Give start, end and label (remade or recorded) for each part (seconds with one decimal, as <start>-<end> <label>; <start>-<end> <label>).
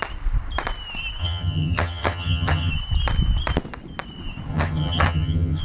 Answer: 0.0-1.2 recorded; 1.2-2.7 remade; 2.7-4.5 recorded; 4.5-5.6 remade